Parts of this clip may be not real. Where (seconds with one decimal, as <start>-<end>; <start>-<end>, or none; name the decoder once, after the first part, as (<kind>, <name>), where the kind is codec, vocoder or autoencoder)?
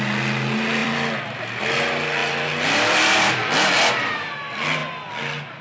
0.8-1.6 (vocoder, BigVGAN v2); 2.2-3.5